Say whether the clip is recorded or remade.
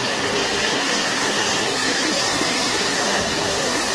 remade